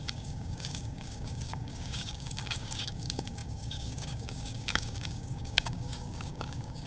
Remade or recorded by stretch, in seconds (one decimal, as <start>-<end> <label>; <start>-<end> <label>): 0.0-6.9 remade